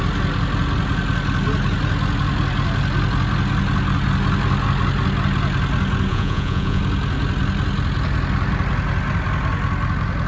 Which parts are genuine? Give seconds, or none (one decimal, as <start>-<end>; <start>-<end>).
0.0-6.1; 6.8-10.3